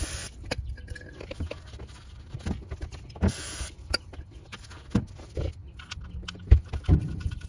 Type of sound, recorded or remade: recorded